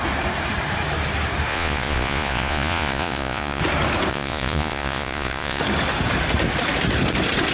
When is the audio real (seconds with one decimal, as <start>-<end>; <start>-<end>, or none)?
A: 0.0-1.5; 3.6-4.1; 5.6-7.5